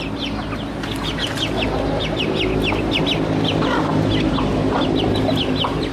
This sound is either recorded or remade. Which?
recorded